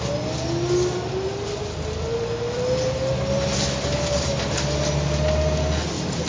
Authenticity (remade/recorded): recorded